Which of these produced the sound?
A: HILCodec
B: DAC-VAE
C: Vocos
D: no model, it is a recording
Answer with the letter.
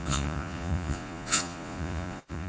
C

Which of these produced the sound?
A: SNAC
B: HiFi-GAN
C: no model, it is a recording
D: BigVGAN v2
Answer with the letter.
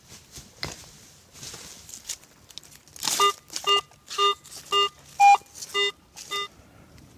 C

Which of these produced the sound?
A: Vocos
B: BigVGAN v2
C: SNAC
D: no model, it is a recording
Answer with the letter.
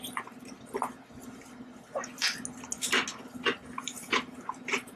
D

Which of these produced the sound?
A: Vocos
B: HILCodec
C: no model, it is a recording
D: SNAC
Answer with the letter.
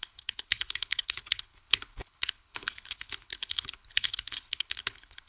B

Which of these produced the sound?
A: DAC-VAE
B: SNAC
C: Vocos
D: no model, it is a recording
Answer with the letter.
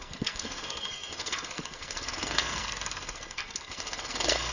B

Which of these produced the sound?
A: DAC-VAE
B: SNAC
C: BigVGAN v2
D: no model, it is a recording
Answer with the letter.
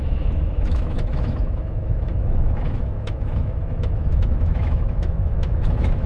A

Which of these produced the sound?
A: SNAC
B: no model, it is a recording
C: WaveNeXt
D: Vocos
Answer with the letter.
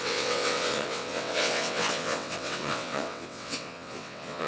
C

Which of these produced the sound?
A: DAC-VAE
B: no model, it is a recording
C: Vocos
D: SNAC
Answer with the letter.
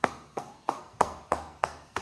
D